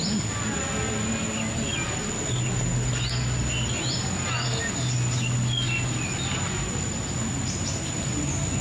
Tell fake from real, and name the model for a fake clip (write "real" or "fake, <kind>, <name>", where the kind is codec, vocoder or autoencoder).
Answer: real